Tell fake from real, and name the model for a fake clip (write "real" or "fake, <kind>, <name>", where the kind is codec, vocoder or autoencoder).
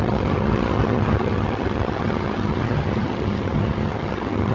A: fake, vocoder, HiFi-GAN